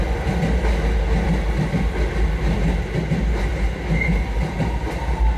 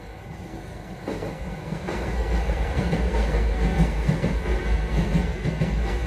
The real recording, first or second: first